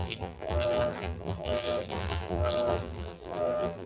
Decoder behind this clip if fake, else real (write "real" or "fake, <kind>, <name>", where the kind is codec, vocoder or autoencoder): fake, vocoder, BigVGAN v2